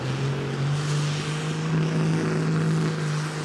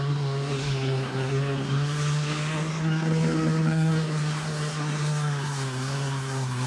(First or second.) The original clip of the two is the first